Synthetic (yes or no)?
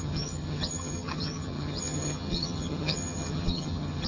yes